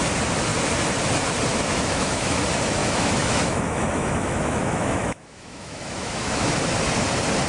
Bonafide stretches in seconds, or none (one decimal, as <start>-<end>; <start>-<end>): 0.0-1.5; 2.4-2.8; 6.5-7.5